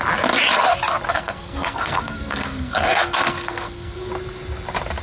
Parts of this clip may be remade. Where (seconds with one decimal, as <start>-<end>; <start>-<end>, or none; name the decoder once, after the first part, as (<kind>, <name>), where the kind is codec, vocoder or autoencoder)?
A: 1.1-4.1 (codec, SNAC)